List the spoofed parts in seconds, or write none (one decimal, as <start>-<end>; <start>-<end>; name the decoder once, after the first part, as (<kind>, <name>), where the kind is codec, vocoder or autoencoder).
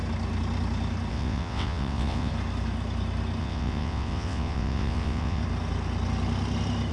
1.1-2.3 (vocoder, WaveNeXt); 3.4-5.4